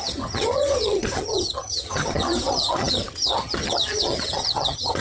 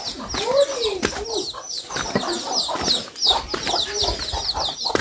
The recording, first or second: second